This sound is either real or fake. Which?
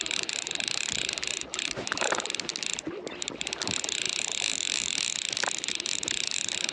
real